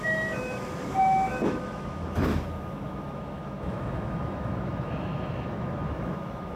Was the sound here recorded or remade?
remade